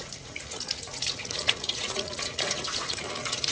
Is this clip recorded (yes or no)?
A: no